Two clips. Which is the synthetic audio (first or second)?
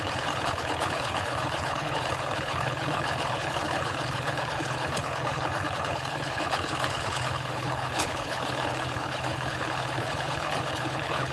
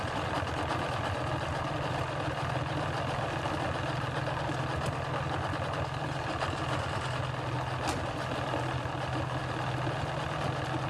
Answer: first